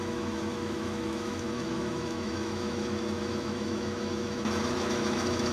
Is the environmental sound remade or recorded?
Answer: remade